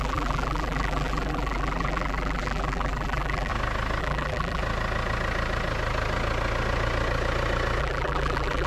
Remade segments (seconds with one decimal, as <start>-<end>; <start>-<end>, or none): 0.0-3.5; 4.0-4.6; 7.8-8.7